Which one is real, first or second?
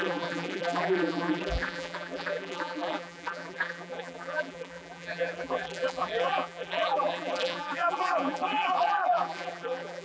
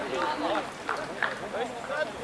second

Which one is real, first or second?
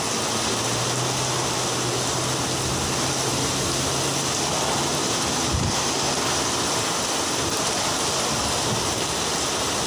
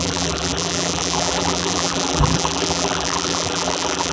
first